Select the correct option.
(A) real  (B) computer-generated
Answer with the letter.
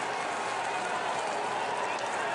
A